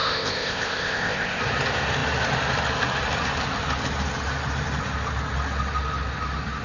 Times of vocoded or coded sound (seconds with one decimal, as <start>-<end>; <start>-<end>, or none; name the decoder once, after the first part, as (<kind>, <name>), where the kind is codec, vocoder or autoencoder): 0.0-1.4 (codec, ZipCodec)